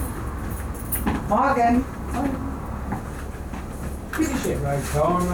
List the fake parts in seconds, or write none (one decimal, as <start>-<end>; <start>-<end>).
1.5-2.0